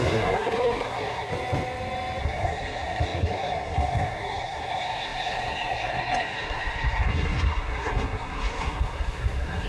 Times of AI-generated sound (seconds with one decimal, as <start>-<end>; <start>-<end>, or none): 0.0-1.3; 2.2-9.7